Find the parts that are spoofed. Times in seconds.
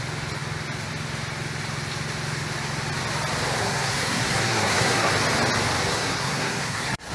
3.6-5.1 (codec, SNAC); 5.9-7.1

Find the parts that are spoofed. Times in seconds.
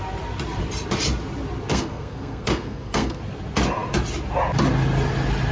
1.7-3.2 (codec, SNAC)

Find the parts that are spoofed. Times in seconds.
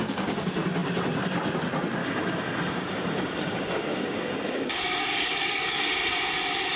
2.0-5.8 (codec, DAC)